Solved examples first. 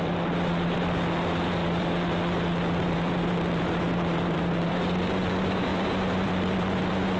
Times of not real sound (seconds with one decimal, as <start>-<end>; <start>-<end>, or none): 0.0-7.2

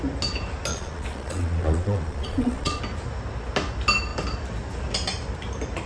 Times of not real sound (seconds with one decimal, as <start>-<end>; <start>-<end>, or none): 0.7-2.8

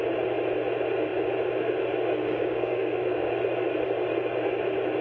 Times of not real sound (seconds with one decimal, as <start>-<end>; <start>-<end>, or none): 2.2-3.3

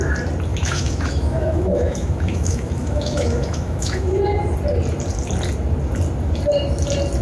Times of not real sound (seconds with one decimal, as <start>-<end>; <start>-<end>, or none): 0.5-4.2

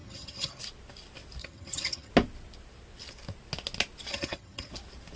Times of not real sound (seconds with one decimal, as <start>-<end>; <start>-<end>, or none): 0.0-0.6; 1.4-2.1; 4.1-4.7

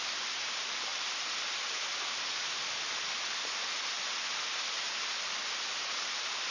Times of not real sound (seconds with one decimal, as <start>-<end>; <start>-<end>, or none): none

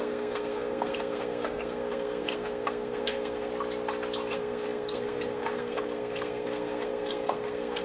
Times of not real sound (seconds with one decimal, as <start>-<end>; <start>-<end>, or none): 0.0-3.5; 4.3-7.8